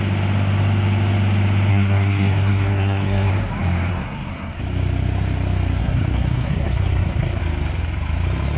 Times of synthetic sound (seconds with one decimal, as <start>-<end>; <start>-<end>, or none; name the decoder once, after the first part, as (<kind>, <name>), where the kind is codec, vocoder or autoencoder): 1.7-3.3 (codec, SNAC); 3.9-4.6; 5.8-7.4